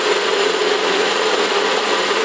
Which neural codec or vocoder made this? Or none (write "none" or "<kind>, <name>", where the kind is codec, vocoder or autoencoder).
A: vocoder, Vocos